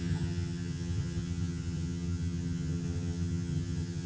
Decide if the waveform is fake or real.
fake